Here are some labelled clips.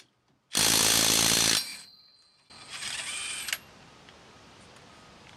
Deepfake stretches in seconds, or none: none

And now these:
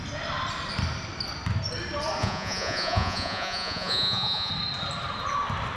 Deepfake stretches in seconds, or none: 2.2-4.5 (vocoder, Vocos)

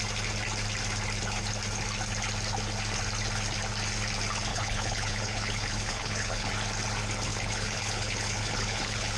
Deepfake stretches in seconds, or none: 4.5-6.5 (codec, HILCodec); 7.3-9.2

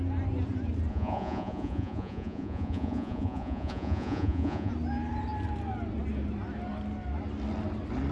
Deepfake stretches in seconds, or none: 0.9-4.7 (vocoder, Vocos)

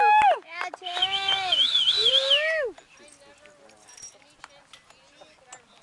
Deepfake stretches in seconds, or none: 1.0-2.1 (codec, DAC)